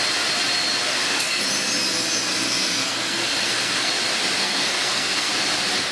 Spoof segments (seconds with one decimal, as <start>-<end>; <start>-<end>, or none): 0.9-1.4; 2.3-3.9; 4.4-5.3